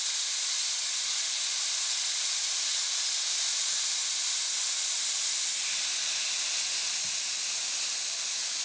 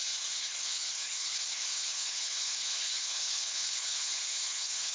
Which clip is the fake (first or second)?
second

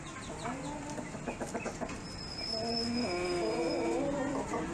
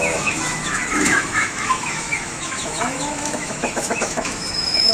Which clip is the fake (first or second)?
second